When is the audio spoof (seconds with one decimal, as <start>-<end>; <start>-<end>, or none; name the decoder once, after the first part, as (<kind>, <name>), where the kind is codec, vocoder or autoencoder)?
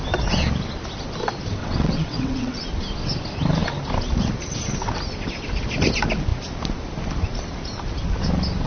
1.6-2.6 (vocoder, WaveNeXt)